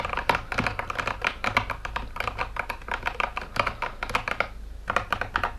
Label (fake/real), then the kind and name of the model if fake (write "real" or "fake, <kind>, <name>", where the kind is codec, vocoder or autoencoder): real